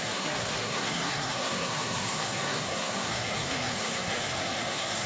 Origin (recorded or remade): remade